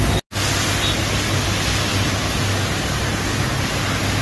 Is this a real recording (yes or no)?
yes